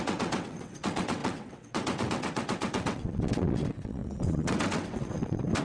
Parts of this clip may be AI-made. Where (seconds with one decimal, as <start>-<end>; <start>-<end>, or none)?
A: 0.0-5.6